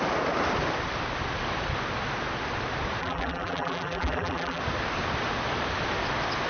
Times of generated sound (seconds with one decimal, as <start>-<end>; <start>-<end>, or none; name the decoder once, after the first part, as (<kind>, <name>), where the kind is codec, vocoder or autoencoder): 3.0-4.6 (vocoder, BigVGAN v2)